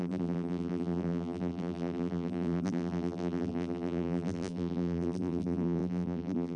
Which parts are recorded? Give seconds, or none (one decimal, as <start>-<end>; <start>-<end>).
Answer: none